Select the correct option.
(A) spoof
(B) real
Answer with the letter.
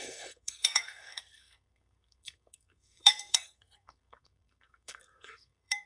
A